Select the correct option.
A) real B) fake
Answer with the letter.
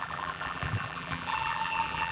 B